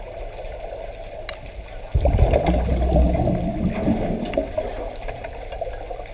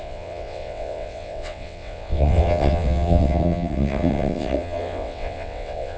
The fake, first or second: second